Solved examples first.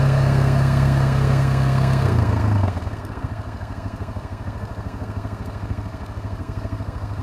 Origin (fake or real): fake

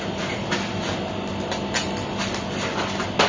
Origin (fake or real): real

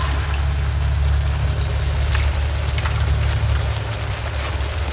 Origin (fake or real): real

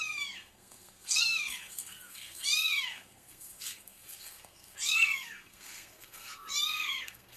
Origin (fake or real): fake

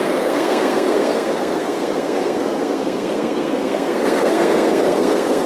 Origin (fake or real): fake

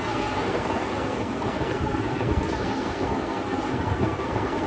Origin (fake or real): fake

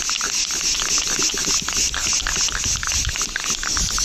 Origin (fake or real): real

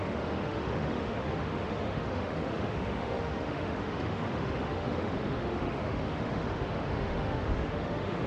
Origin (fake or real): fake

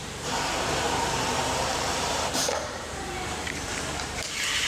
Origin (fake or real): fake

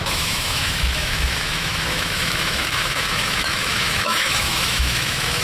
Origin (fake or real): fake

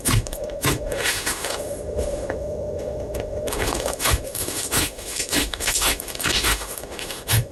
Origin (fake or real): fake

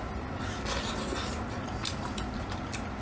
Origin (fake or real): real